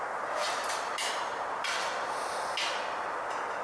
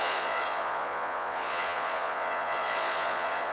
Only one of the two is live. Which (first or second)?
first